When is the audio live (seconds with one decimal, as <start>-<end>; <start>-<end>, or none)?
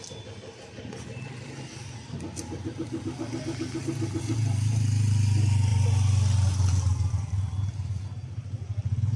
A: 0.0-9.2